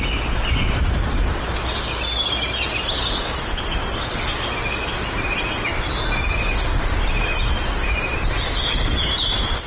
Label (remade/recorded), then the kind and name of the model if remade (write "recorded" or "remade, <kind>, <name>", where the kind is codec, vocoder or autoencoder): recorded